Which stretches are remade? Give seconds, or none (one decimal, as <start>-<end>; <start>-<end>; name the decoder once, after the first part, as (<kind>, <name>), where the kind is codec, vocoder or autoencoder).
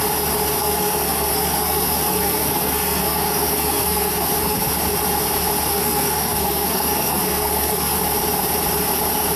0.6-4.7 (codec, SNAC); 5.7-8.0